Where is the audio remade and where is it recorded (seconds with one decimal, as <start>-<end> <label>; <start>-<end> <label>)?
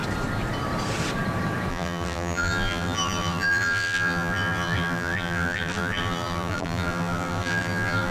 0.0-1.7 recorded; 1.7-8.1 remade